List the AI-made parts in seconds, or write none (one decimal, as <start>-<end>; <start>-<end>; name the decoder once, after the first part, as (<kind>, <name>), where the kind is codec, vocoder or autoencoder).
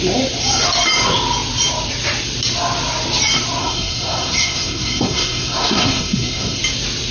3.6-6.6 (codec, SNAC)